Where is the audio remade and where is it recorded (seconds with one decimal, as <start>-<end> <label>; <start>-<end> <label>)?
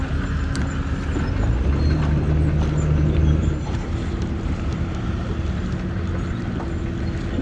0.0-3.4 recorded; 3.4-5.3 remade; 5.3-7.4 recorded